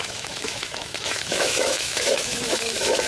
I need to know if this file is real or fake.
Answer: fake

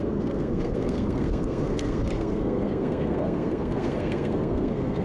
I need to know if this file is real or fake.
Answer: fake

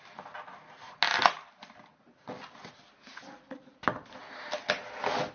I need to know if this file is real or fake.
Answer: real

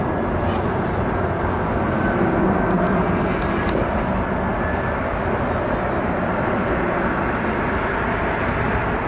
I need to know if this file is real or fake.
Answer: real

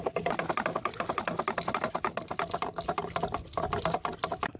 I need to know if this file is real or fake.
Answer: real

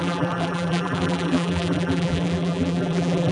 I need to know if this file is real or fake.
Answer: fake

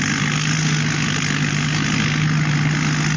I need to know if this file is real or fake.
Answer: real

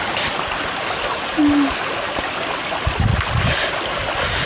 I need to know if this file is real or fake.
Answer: real